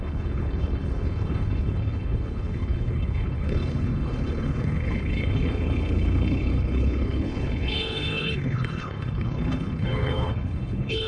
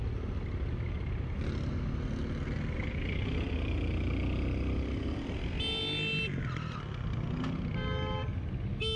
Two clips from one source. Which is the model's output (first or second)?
first